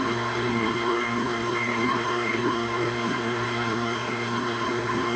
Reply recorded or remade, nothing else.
remade